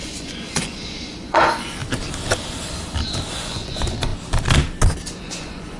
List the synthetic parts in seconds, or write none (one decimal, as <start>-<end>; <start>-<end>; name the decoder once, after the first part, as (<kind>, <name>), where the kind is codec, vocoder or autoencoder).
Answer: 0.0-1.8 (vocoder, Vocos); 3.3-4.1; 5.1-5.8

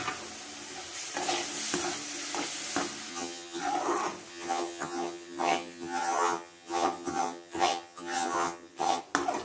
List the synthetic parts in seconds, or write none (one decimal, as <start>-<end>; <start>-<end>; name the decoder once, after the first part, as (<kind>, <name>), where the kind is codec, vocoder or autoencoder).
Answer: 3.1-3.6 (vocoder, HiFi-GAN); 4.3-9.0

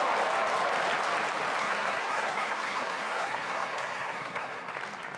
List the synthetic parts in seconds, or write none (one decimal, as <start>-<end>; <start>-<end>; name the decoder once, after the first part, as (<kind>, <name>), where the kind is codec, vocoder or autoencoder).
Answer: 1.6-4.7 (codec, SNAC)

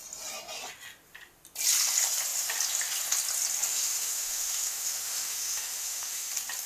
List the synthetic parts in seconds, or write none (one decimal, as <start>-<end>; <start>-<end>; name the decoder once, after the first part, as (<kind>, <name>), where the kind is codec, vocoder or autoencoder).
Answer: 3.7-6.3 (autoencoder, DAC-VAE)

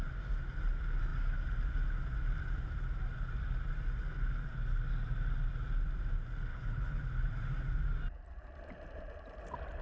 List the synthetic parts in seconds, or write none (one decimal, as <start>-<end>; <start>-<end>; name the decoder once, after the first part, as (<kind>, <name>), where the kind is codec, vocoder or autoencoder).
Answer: 6.5-7.0 (codec, HILCodec)

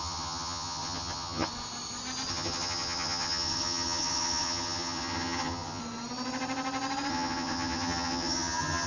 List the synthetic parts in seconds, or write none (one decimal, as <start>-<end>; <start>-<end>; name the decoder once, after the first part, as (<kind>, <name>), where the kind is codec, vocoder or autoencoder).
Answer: 0.0-1.5 (vocoder, HiFi-GAN); 2.3-5.8; 7.1-8.9

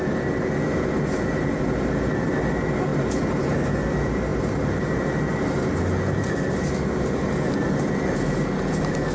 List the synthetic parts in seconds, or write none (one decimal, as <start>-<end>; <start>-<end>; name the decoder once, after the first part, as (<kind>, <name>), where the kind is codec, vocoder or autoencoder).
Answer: none